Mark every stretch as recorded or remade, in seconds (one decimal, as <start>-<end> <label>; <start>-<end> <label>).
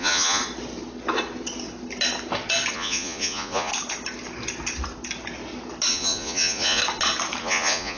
0.0-0.4 remade; 0.4-2.7 recorded; 2.7-3.7 remade; 3.7-5.9 recorded; 5.9-6.8 remade; 6.8-7.4 recorded; 7.4-8.0 remade